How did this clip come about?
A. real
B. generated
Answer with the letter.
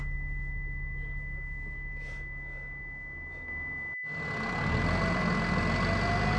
A